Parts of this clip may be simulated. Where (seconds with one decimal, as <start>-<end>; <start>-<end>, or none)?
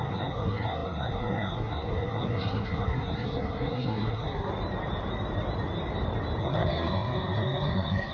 0.0-4.5; 6.4-8.1